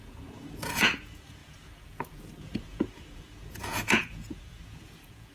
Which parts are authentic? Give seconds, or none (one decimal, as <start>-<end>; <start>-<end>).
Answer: none